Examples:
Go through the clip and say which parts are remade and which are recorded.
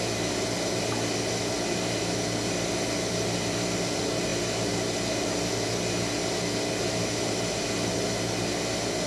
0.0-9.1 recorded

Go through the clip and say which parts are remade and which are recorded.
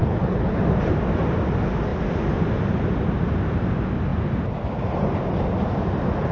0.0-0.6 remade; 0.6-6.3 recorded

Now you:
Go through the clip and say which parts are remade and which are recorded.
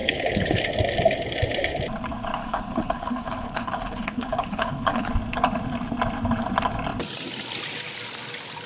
0.0-0.6 remade; 0.6-2.4 recorded; 2.4-5.1 remade; 5.1-8.7 recorded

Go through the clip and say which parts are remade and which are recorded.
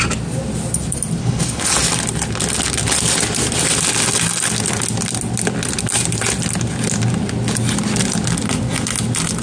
0.0-1.2 recorded; 1.2-1.7 remade; 1.7-9.4 recorded